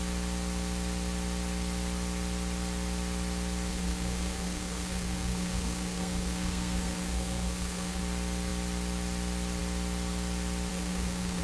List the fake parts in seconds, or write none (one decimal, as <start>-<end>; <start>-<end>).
3.7-8.0; 10.7-11.4